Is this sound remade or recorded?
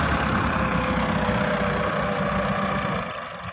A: recorded